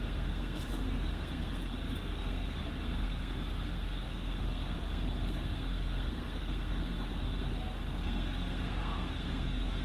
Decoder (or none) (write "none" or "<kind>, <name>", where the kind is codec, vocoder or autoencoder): codec, SNAC